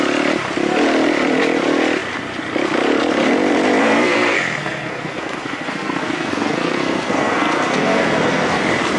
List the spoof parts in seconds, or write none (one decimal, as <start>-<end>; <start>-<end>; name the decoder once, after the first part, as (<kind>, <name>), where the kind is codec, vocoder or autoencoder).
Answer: 3.8-8.6 (codec, SNAC)